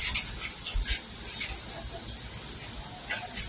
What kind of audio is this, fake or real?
real